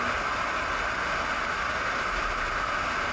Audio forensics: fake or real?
real